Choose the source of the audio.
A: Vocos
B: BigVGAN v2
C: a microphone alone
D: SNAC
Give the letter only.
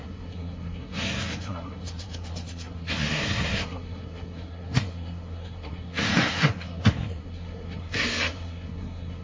D